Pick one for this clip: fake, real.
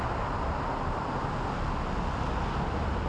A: real